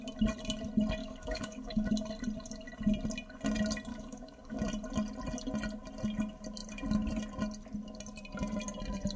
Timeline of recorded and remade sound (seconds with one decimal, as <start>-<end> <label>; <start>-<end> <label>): 0.0-1.0 recorded; 1.0-1.9 remade; 1.9-3.9 recorded; 3.9-4.6 remade; 4.6-9.2 recorded